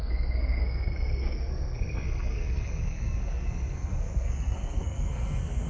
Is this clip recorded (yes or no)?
no